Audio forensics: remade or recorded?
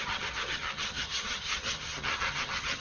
remade